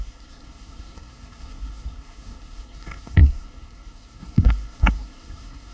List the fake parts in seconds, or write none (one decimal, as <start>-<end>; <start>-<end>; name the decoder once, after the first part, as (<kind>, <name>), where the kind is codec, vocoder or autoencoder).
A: 0.0-5.7 (codec, SNAC)